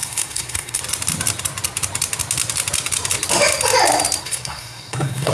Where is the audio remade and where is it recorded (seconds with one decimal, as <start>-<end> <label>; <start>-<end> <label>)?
0.0-0.8 remade; 0.8-4.2 recorded; 4.2-5.3 remade